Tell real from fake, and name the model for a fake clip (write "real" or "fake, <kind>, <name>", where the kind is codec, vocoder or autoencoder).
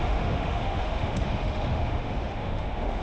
fake, autoencoder, DAC-VAE